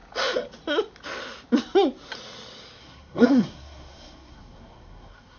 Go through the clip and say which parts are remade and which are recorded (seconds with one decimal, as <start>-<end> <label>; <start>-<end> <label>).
0.0-2.8 recorded; 2.8-5.4 remade